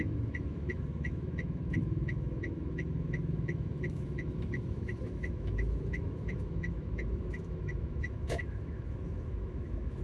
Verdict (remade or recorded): remade